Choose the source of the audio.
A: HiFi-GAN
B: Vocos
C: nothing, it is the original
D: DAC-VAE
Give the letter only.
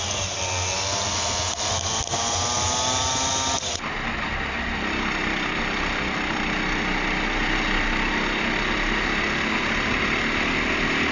C